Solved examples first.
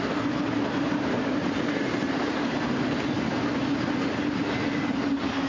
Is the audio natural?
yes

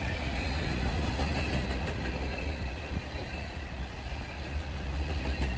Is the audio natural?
no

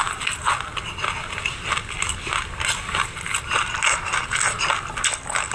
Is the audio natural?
yes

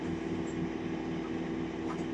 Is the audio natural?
yes